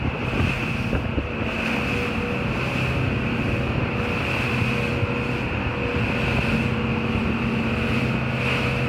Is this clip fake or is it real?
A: real